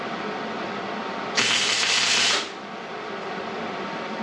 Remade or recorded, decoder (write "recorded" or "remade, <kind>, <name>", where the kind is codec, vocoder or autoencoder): remade, vocoder, BigVGAN v2